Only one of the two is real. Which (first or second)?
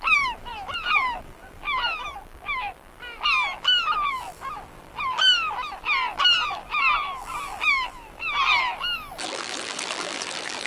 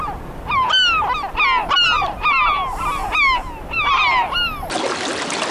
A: second